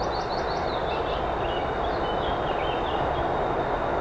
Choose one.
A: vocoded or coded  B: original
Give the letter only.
B